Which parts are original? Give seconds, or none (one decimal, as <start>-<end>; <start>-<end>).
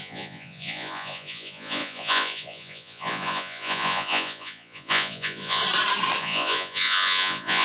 5.6-6.2